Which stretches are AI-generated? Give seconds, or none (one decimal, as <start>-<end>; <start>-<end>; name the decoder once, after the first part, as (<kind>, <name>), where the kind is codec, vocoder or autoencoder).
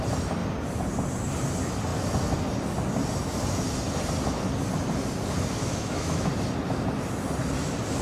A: 5.6-6.3 (autoencoder, DAC-VAE)